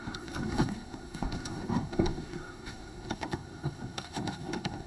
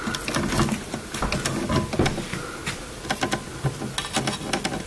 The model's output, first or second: first